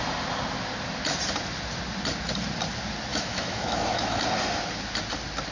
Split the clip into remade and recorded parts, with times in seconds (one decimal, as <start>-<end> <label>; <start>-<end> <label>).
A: 0.0-3.1 recorded; 3.1-4.2 remade; 4.2-5.5 recorded